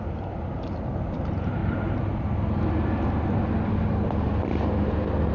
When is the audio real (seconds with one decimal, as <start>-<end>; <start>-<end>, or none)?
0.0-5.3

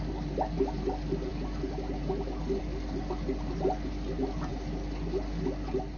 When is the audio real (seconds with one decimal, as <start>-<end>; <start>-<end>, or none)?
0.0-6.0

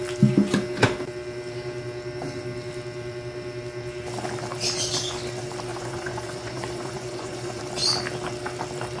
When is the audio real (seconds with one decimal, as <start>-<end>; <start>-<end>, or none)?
0.0-5.7; 7.6-9.0

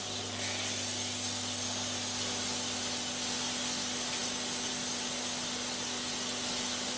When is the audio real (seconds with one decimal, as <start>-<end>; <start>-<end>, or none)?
0.0-7.0

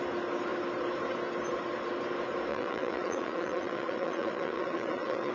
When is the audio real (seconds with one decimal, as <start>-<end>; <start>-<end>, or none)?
0.0-2.5

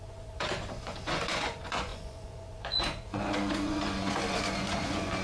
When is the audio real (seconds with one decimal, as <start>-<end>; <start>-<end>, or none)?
none